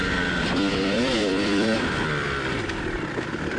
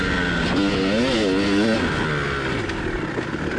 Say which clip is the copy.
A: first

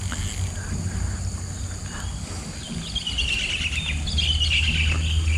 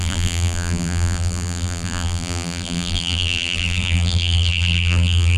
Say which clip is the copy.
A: second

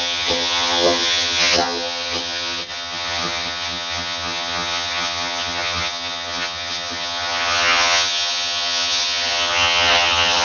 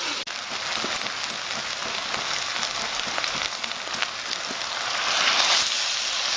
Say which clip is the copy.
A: first